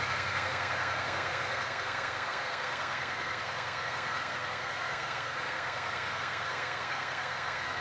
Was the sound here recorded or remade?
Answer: remade